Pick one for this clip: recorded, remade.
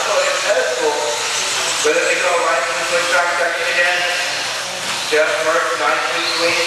remade